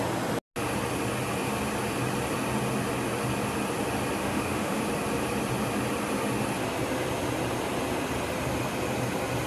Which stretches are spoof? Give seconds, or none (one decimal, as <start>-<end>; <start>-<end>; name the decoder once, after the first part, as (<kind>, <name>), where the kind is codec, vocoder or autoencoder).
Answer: 4.2-4.8 (autoencoder, DAC-VAE)